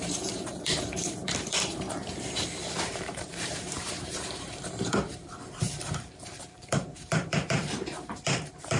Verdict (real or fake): fake